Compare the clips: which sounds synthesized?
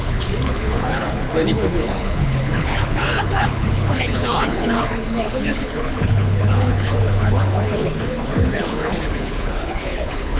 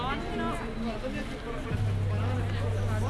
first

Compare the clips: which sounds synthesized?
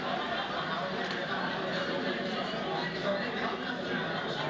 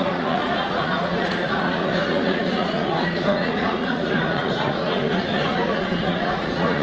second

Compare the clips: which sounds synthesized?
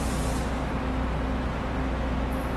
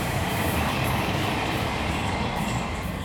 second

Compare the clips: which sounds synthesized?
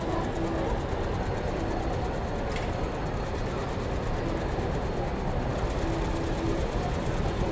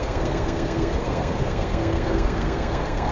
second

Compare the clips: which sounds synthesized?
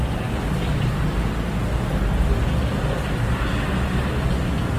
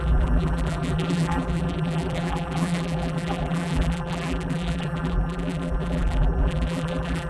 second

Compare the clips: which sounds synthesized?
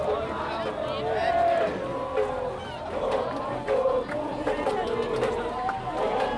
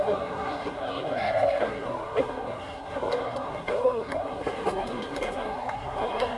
second